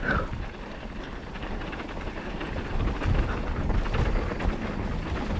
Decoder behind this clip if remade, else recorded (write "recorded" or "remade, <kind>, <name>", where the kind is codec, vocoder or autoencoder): recorded